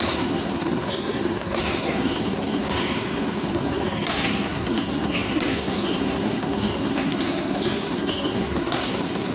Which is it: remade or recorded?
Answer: remade